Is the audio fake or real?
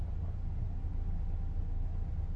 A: real